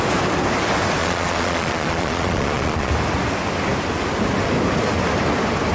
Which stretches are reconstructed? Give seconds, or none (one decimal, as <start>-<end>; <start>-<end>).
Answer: 1.0-2.9